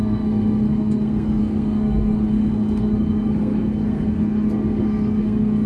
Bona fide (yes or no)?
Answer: no